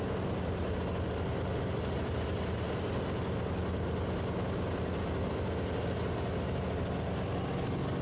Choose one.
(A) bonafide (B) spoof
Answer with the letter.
A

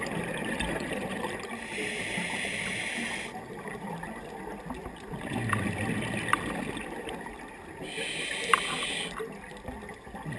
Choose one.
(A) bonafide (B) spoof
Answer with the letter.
A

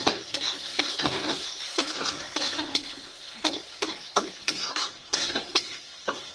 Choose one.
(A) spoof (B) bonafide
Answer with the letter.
A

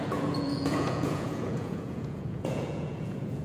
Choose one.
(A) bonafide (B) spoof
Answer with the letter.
B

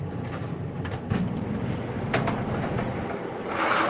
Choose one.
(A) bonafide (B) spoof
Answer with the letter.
B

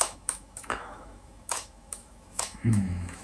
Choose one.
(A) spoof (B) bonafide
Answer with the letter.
A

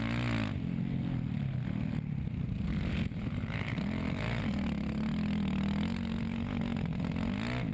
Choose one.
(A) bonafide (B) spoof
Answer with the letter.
A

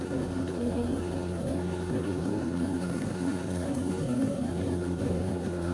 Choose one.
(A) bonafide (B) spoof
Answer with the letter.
B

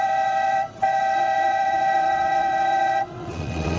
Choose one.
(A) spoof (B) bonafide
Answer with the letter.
A